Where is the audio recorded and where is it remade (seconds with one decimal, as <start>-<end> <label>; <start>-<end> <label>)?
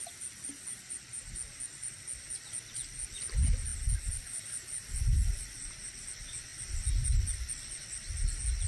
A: 0.0-8.7 recorded